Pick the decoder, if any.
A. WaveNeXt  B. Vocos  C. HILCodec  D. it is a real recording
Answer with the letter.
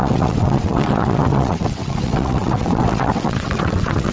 A